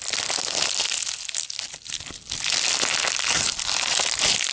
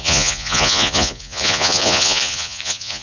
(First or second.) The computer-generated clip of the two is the second